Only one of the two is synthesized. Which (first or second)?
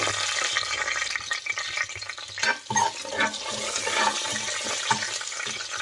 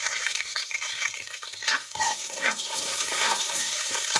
second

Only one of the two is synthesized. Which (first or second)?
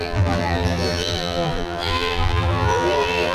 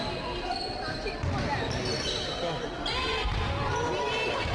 first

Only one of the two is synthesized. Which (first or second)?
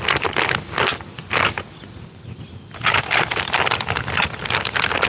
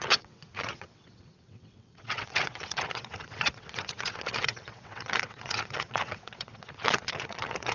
second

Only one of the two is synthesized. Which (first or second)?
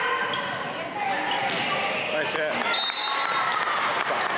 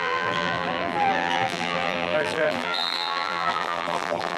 second